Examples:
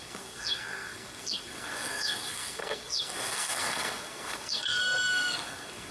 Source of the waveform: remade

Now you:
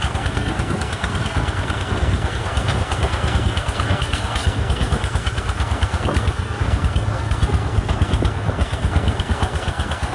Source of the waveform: remade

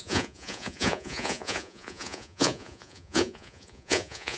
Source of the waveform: remade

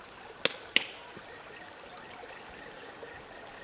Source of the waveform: recorded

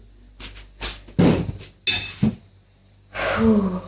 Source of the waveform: recorded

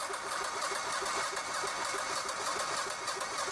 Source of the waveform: remade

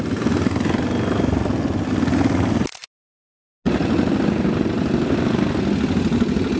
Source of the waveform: recorded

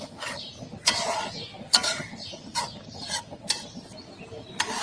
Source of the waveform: recorded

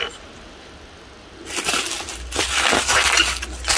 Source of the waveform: recorded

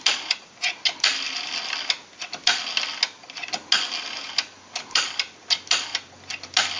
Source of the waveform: recorded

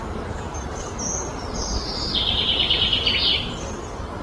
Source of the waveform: recorded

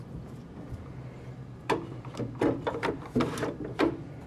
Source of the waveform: remade